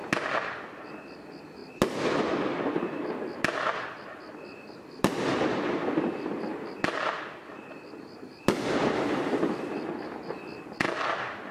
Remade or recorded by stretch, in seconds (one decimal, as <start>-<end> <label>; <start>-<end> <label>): 0.0-11.5 recorded